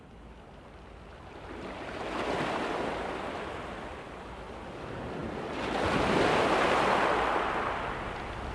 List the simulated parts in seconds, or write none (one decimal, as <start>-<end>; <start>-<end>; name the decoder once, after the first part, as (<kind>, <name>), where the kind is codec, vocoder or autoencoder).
none